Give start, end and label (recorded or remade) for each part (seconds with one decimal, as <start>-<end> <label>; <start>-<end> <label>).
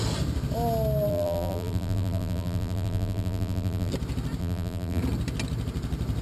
0.0-1.1 recorded; 1.1-3.9 remade; 3.9-4.4 recorded; 4.4-5.0 remade; 5.0-6.2 recorded